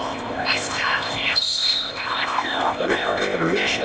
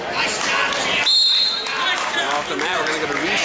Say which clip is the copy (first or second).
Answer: first